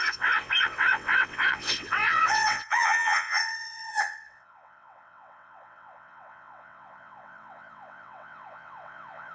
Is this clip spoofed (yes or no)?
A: yes